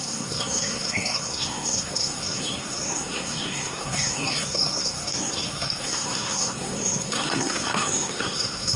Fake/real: fake